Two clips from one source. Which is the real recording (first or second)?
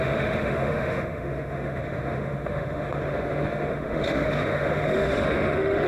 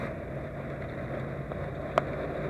second